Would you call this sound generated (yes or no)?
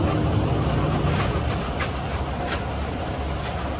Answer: no